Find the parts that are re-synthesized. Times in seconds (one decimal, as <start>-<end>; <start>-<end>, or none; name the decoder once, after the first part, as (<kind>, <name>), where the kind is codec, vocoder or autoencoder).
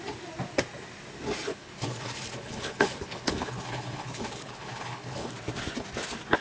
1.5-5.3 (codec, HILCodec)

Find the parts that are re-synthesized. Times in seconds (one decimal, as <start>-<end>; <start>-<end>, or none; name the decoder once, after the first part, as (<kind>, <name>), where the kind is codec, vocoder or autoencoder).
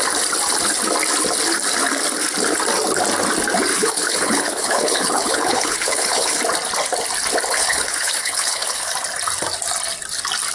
3.7-6.4 (codec, HILCodec); 7.5-8.9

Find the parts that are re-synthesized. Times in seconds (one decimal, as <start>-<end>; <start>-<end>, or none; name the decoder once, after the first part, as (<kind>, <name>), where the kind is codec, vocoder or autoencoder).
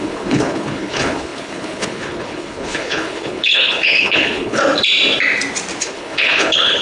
0.0-4.6 (codec, HILCodec); 5.8-6.8